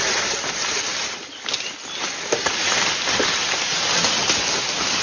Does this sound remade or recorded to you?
recorded